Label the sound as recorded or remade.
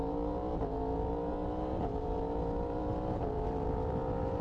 remade